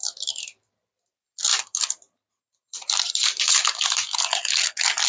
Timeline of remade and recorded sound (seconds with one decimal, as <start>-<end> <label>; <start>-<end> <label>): 0.0-1.5 recorded; 1.5-4.2 remade; 4.2-5.1 recorded